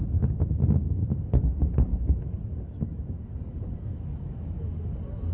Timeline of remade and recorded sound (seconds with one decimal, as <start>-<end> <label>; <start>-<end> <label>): 0.0-1.9 recorded; 1.9-3.4 remade; 3.4-3.9 recorded; 3.9-4.7 remade; 4.7-5.3 recorded